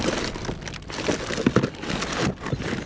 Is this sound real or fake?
real